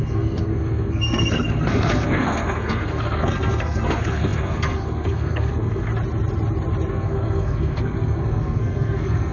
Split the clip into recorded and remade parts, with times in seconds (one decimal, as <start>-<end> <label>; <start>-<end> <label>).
0.0-5.9 remade; 5.9-6.9 recorded; 6.9-9.3 remade